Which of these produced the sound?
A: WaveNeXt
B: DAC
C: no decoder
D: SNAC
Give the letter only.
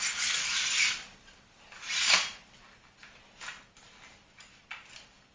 C